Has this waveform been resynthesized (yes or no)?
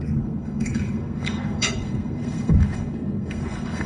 yes